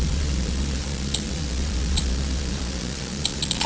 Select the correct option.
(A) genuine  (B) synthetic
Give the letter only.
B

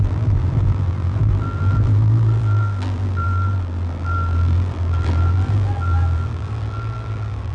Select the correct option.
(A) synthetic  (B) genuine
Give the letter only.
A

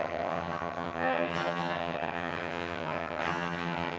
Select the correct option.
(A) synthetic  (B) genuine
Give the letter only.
A